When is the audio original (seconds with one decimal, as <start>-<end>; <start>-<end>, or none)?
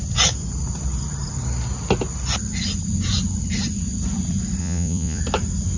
0.0-4.6; 5.2-5.8